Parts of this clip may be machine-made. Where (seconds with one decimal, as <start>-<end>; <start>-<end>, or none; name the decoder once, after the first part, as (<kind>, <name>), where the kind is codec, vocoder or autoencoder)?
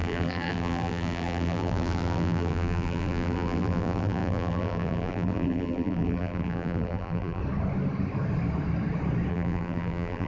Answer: 0.0-7.4 (vocoder, BigVGAN v2); 9.3-10.3